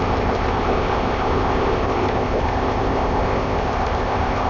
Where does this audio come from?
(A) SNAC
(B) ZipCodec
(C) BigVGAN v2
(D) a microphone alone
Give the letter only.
B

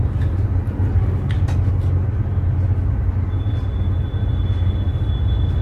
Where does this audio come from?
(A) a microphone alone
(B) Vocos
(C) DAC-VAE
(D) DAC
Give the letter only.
A